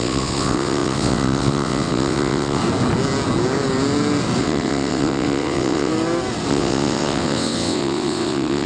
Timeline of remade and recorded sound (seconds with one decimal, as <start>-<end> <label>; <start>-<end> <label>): 0.0-2.6 remade; 2.6-4.4 recorded; 4.4-5.9 remade; 5.9-6.5 recorded; 6.5-8.7 remade